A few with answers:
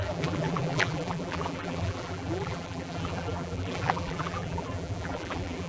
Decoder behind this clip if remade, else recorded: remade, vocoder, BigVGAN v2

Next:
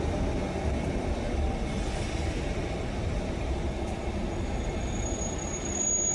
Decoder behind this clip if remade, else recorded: recorded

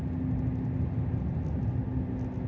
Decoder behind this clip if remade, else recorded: recorded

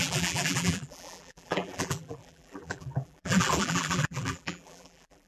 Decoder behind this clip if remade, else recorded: remade, vocoder, BigVGAN v2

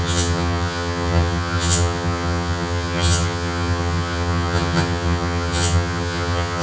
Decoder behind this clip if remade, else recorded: remade, vocoder, HiFi-GAN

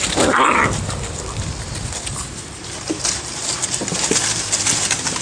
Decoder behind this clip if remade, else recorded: recorded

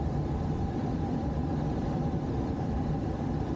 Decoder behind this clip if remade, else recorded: remade, vocoder, BigVGAN v2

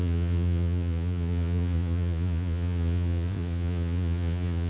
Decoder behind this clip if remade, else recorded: remade, vocoder, Vocos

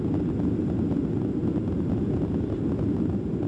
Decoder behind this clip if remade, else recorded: recorded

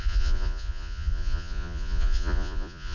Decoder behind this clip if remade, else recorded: remade, vocoder, Vocos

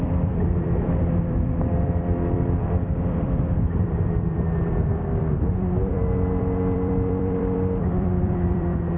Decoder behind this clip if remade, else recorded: remade, vocoder, BigVGAN v2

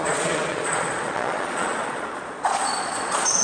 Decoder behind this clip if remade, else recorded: remade, vocoder, Vocos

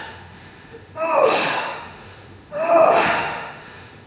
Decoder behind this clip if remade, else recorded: remade, autoencoder, DAC-VAE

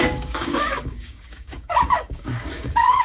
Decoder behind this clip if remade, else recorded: remade, codec, DAC